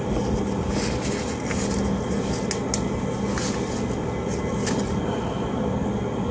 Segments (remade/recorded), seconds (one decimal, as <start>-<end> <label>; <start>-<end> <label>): 0.0-6.3 recorded